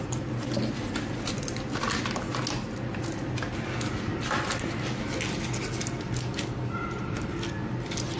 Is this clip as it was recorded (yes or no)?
yes